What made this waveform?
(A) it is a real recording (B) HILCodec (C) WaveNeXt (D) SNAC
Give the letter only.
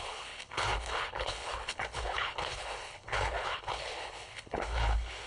B